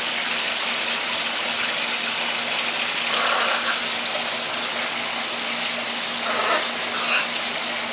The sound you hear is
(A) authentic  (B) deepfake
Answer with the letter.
A